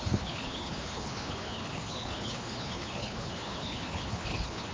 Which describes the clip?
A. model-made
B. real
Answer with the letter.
A